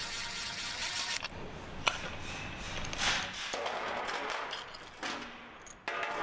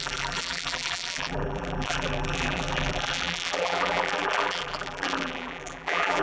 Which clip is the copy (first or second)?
second